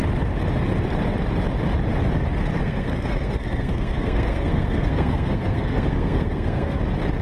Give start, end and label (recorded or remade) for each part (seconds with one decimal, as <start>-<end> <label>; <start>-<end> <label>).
0.0-2.6 recorded; 2.6-6.8 remade; 6.8-7.2 recorded